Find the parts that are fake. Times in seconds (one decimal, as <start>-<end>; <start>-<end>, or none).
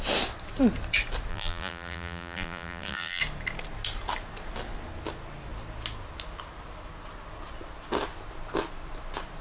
1.3-3.2